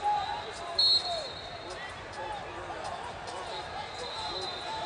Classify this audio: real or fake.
fake